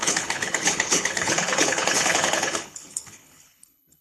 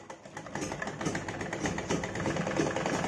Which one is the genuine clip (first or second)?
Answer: second